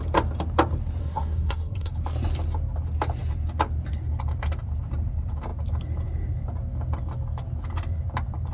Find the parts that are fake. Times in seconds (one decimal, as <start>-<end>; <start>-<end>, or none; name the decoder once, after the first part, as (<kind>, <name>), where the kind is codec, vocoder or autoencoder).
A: 1.0-1.9 (codec, SNAC)